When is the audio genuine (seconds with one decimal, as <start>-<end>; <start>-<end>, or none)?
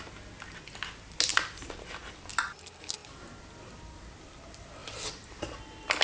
0.0-1.3; 2.3-4.8; 5.6-6.0